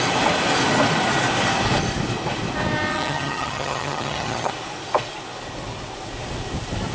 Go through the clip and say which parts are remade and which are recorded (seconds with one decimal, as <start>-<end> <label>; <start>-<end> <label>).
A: 0.0-2.9 recorded; 2.9-4.5 remade; 4.5-6.9 recorded